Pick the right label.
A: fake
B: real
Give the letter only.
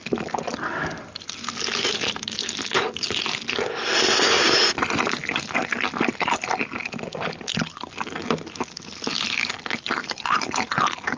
B